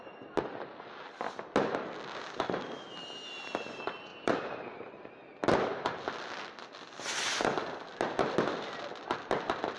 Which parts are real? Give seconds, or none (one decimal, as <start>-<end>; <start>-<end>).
0.0-4.1; 4.8-9.8